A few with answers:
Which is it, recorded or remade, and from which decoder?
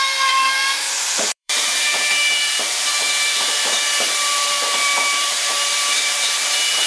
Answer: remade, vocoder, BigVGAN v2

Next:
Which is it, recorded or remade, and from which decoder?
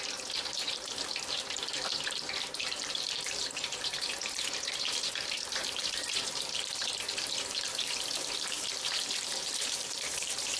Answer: remade, vocoder, BigVGAN v2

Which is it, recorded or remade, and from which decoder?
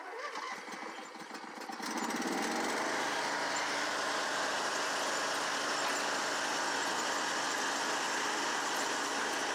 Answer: recorded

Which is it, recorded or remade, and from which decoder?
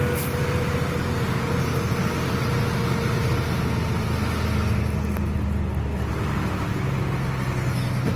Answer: recorded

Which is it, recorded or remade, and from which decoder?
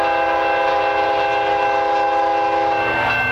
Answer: recorded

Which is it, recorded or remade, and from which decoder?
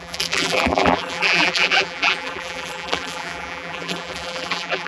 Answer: remade, vocoder, BigVGAN v2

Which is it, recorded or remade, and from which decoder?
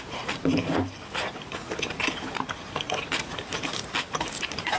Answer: remade, vocoder, BigVGAN v2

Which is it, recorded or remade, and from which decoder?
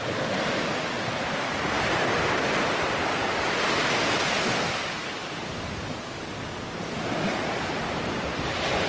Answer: recorded